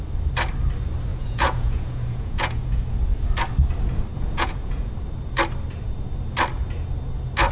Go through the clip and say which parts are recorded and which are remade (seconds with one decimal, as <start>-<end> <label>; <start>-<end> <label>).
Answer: 0.0-1.1 recorded; 1.1-2.8 remade; 2.8-4.1 recorded; 4.1-4.9 remade; 4.9-7.5 recorded